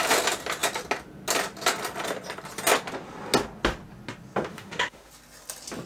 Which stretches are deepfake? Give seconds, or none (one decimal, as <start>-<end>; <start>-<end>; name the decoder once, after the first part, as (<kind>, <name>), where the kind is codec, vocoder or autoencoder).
4.5-5.1 (autoencoder, DAC-VAE)